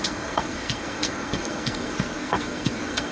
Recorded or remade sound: remade